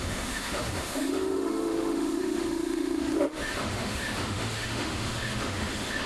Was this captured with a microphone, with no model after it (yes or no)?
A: no